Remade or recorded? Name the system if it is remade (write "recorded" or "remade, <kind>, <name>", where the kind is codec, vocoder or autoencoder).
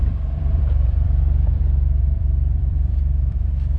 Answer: remade, vocoder, BigVGAN v2